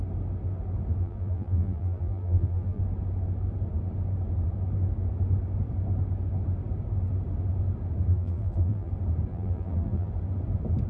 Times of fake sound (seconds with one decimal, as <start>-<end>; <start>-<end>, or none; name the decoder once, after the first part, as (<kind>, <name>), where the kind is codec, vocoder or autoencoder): 1.0-2.8 (vocoder, BigVGAN v2); 8.1-8.9; 9.3-10.1

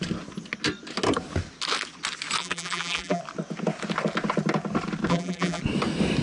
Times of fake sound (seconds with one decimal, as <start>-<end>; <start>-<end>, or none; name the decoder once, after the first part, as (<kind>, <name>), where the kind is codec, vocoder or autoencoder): 2.4-3.2 (vocoder, BigVGAN v2); 5.1-5.6

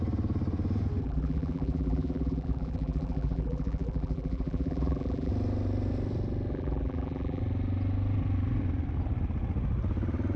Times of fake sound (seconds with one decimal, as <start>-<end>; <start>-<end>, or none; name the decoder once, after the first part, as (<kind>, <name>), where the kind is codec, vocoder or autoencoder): 1.0-5.3 (vocoder, BigVGAN v2); 6.5-7.4

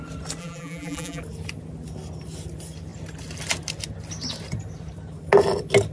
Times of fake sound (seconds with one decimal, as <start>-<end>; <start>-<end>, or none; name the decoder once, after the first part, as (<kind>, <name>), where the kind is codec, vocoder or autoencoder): 0.4-1.2 (vocoder, BigVGAN v2)